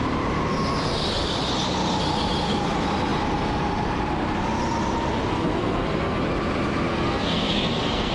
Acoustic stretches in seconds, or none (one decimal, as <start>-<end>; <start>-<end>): 0.0-5.3; 6.2-6.9